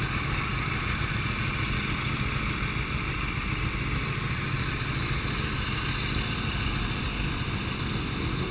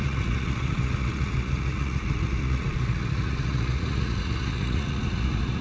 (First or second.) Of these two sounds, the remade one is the second